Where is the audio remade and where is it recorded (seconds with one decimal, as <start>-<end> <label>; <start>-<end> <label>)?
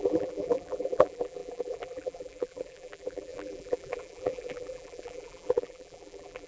0.0-6.5 remade